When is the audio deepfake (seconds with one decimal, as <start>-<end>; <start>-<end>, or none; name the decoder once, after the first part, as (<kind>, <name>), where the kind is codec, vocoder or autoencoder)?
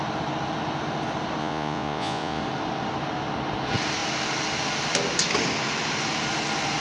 1.4-2.4 (vocoder, Vocos)